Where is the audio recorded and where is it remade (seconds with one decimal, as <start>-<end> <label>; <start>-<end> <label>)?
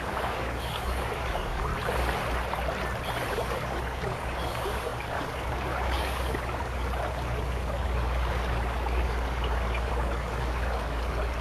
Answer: 0.0-1.7 remade; 1.7-3.3 recorded; 3.3-11.4 remade